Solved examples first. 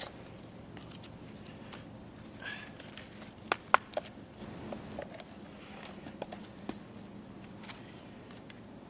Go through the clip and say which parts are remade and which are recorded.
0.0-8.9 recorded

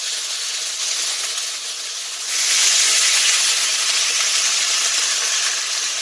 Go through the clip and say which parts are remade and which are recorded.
0.0-3.7 remade; 3.7-6.0 recorded

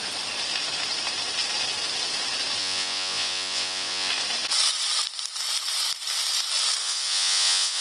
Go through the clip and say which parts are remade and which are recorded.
0.0-2.6 recorded; 2.6-4.1 remade; 4.1-6.8 recorded; 6.8-7.8 remade

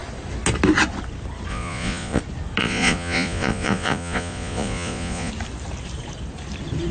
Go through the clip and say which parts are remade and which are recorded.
0.0-1.5 recorded; 1.5-2.2 remade; 2.2-2.6 recorded; 2.6-5.3 remade; 5.3-6.9 recorded

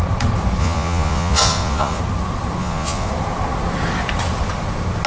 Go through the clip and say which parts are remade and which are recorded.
0.0-0.6 recorded; 0.6-2.0 remade; 2.0-2.6 recorded; 2.6-3.1 remade; 3.1-5.1 recorded

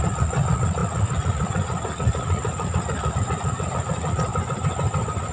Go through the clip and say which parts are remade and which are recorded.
0.0-4.3 remade; 4.3-5.3 recorded